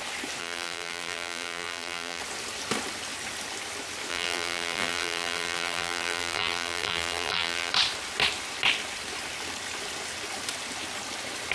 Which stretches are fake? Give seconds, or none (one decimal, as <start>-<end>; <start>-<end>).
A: 0.4-2.2; 4.1-7.7